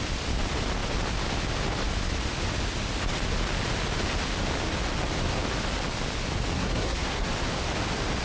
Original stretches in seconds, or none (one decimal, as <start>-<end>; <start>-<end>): 0.0-6.5; 7.3-8.2